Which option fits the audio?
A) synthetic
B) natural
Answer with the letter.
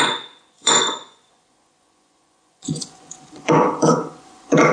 A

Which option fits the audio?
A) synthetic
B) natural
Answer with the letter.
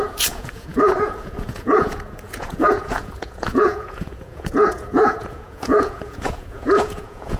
A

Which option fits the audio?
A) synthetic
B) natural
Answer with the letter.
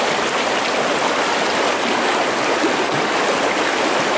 B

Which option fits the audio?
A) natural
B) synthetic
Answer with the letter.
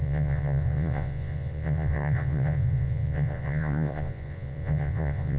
B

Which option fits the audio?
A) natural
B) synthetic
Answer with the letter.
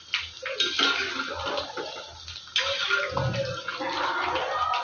A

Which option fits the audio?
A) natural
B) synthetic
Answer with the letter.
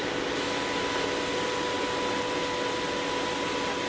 A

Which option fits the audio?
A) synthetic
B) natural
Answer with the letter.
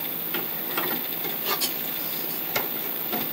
B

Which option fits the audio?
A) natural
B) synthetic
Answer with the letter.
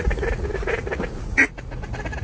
B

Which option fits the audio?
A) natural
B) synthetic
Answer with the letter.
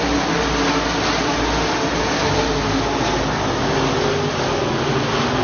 A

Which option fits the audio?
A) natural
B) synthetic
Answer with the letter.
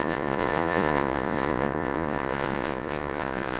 B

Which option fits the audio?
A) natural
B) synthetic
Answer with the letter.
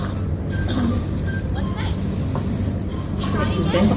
A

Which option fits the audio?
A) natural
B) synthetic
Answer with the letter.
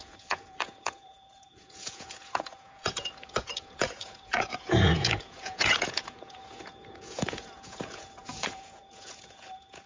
B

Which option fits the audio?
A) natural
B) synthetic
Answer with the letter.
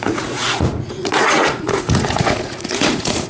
B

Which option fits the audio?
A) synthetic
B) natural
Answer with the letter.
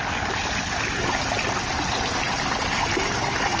B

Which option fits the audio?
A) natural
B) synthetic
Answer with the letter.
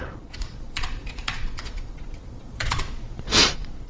B